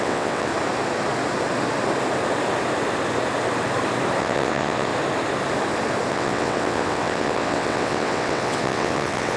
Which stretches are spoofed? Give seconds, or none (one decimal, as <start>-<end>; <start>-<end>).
0.0-0.5; 4.2-4.9; 6.1-9.4